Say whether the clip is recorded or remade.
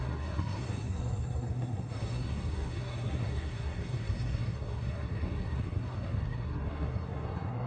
remade